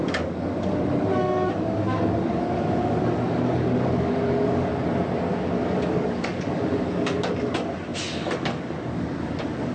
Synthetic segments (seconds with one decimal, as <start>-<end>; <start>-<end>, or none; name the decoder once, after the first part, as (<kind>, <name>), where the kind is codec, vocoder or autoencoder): 0.0-4.7 (codec, DAC); 5.3-9.7